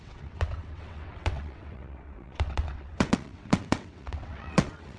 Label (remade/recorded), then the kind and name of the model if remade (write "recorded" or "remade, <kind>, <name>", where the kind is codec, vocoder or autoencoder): remade, vocoder, WaveNeXt